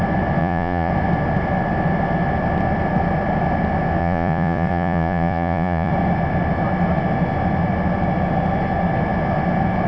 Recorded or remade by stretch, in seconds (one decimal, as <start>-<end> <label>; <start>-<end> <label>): 0.0-0.4 recorded; 0.4-0.9 remade; 0.9-4.0 recorded; 4.0-5.9 remade; 5.9-9.9 recorded